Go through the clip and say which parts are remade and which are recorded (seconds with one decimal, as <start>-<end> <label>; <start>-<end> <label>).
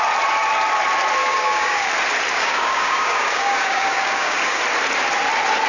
0.0-1.2 recorded; 1.2-1.9 remade; 1.9-2.3 recorded; 2.3-4.6 remade; 4.6-5.7 recorded